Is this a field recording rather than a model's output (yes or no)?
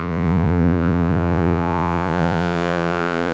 no